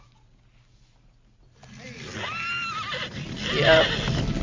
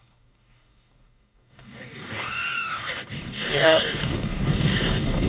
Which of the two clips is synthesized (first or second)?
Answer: second